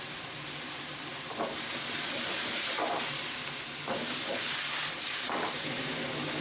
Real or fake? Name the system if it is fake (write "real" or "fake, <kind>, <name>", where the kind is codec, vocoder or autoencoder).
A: fake, vocoder, BigVGAN v2